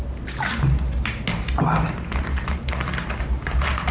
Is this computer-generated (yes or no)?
no